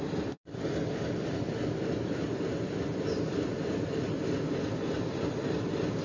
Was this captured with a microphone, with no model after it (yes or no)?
yes